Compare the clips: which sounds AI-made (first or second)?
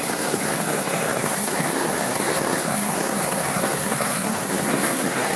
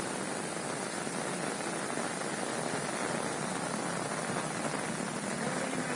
first